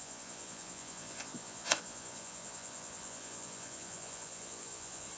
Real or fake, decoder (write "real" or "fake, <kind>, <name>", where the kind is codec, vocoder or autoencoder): fake, vocoder, Vocos